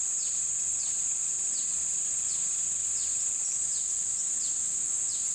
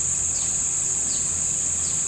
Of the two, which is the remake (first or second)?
first